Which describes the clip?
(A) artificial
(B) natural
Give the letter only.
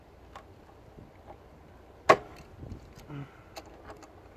B